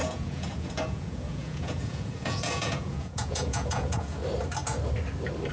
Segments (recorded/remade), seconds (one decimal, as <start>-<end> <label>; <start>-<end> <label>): 0.0-4.2 remade; 4.2-5.5 recorded